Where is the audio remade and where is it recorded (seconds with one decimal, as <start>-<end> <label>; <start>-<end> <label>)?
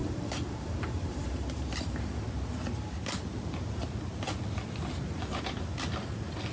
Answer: 0.0-2.2 remade; 2.2-6.5 recorded